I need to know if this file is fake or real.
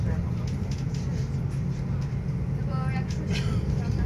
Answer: real